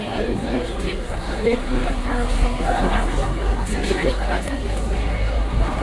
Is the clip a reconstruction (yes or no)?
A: yes